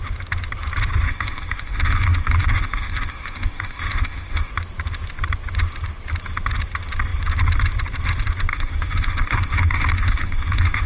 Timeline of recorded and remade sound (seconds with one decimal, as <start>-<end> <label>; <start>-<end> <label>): 0.0-1.1 recorded; 1.1-4.5 remade; 4.5-8.5 recorded; 8.5-10.9 remade